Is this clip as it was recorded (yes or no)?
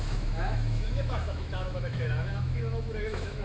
no